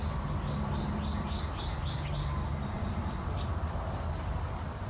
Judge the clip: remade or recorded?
recorded